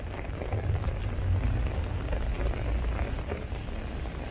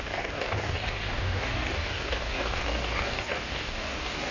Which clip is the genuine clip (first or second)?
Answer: first